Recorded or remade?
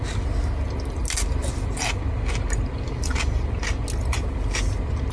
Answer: recorded